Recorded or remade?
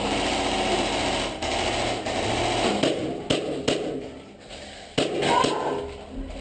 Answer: recorded